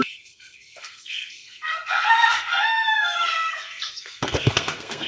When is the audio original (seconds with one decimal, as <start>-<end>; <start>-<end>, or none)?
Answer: none

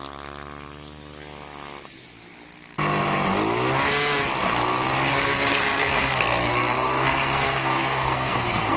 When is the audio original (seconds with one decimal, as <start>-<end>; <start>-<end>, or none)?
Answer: 0.0-5.1

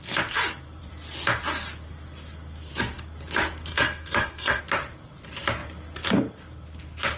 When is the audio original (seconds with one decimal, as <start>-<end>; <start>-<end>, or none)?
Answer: 0.0-3.7; 4.6-7.2

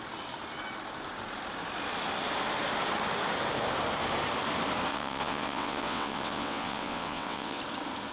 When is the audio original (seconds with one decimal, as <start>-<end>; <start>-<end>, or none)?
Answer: 0.0-4.9; 7.6-8.1

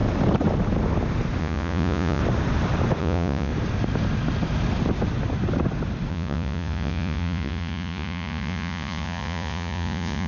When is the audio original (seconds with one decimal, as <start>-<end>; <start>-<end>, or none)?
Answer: 0.0-1.4; 2.2-3.0; 3.5-6.1